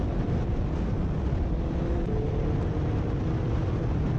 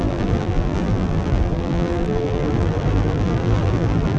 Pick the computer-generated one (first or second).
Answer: second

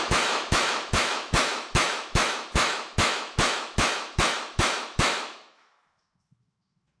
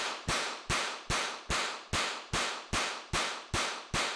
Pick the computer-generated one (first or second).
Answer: first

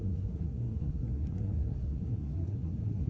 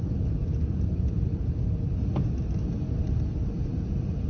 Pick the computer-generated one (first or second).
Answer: first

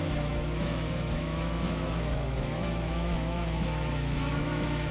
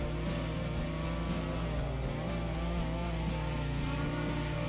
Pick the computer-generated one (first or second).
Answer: first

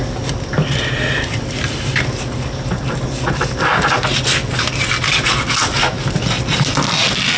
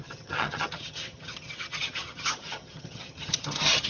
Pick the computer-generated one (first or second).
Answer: second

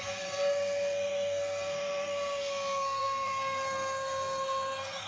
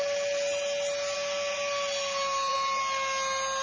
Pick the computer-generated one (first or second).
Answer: first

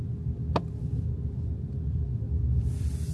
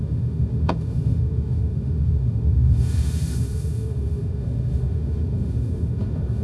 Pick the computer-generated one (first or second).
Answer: second